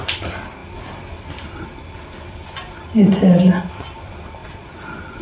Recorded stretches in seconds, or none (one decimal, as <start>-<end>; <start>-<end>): 0.0-5.2